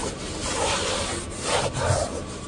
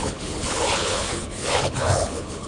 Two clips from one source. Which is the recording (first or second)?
first